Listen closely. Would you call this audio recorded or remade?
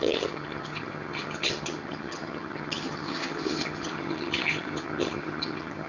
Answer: remade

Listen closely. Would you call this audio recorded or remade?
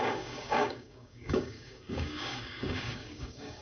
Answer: remade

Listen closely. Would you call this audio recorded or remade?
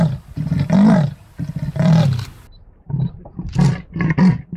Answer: recorded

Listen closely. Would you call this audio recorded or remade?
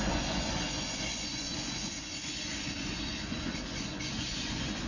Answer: remade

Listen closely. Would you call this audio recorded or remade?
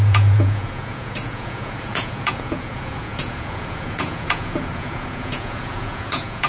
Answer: remade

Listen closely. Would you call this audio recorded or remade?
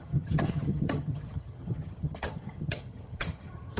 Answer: remade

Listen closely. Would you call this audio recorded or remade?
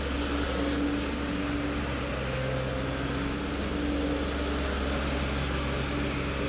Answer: recorded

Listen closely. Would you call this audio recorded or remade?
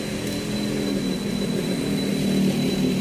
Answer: recorded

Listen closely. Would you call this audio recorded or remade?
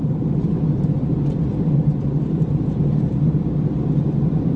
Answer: recorded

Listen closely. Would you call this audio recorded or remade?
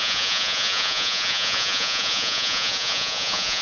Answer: remade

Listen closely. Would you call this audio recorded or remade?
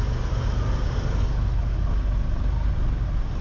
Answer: recorded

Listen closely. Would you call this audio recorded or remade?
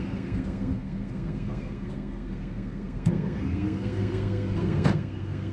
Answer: remade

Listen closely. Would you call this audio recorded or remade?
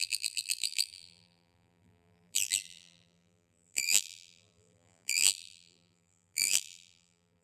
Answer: remade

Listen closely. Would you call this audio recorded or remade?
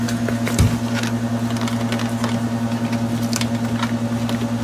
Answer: recorded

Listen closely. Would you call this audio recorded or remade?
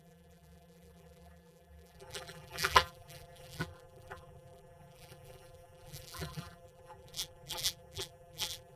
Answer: remade